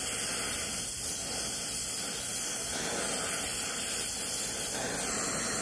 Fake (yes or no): no